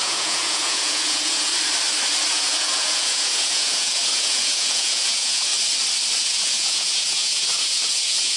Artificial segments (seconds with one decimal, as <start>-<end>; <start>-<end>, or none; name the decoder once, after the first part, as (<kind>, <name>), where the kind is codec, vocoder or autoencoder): 0.0-1.5 (vocoder, Vocos); 2.3-5.5; 6.2-8.4